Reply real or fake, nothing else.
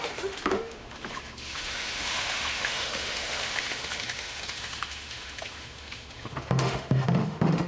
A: fake